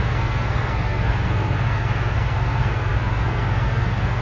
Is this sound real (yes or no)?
no